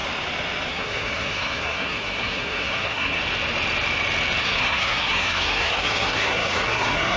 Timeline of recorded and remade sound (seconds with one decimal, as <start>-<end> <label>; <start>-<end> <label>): 0.0-0.7 recorded; 0.7-3.2 remade; 3.2-4.4 recorded; 4.4-7.2 remade